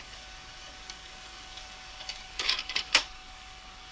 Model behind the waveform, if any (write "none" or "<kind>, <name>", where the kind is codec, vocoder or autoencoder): codec, DAC